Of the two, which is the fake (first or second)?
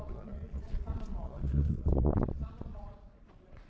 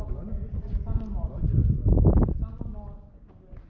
first